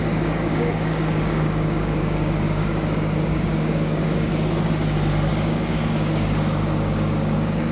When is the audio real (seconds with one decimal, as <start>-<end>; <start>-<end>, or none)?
4.3-5.3